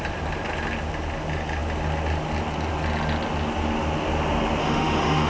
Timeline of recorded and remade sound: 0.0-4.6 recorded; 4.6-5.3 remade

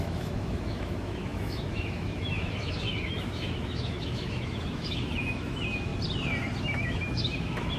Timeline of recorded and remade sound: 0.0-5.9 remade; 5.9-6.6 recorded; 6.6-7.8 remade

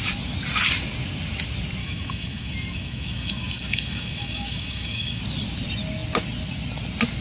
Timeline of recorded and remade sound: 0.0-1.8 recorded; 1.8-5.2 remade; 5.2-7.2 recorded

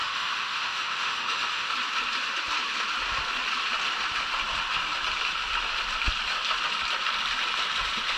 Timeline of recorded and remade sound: 0.0-1.7 remade; 1.7-8.2 recorded